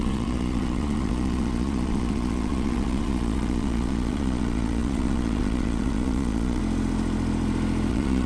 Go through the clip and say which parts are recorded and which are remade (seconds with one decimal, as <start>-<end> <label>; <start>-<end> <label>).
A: 0.0-6.6 remade; 6.6-7.9 recorded; 7.9-8.3 remade